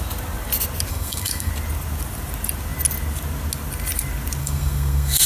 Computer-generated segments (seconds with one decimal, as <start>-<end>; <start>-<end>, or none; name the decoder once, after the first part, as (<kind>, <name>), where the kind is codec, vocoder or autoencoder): 0.9-1.5 (codec, SNAC); 4.4-5.3